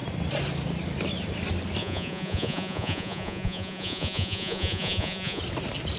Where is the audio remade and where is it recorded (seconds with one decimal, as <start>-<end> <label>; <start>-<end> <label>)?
0.0-1.8 recorded; 1.8-5.4 remade; 5.4-6.0 recorded